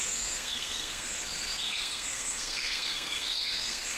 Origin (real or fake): fake